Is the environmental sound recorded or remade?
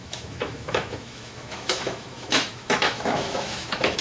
remade